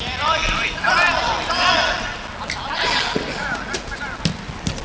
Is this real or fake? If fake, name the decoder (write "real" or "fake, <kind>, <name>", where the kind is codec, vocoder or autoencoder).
real